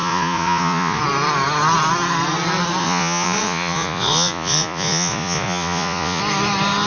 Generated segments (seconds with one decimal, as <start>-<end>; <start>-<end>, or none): 0.0-1.0; 2.8-6.2